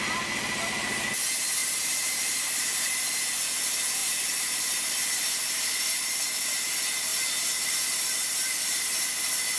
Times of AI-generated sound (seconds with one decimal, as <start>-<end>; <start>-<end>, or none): 1.6-3.2; 4.0-4.9